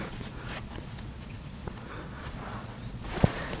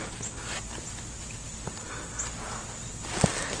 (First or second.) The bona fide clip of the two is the second